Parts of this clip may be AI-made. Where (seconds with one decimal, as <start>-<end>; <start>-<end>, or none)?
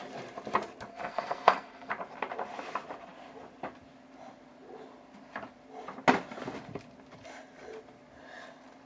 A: 0.9-1.9